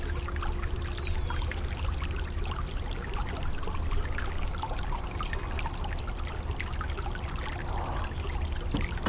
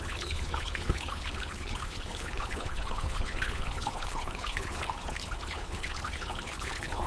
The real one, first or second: first